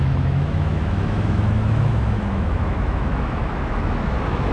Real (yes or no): no